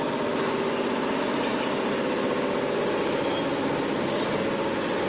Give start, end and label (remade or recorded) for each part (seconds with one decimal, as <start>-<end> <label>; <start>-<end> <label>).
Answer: 0.0-5.1 recorded